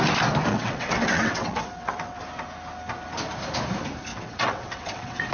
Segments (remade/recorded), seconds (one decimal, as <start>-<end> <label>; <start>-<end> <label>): 0.0-0.5 recorded; 0.5-2.2 remade; 2.2-4.1 recorded; 4.1-5.3 remade